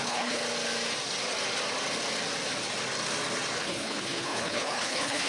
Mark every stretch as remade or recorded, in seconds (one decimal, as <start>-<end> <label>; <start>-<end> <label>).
0.0-0.4 remade; 0.4-3.6 recorded; 3.6-5.3 remade